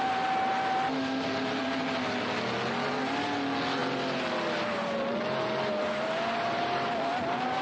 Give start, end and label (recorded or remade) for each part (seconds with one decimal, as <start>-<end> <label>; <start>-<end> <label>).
0.0-7.6 recorded